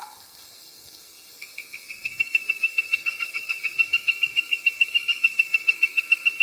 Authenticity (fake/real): fake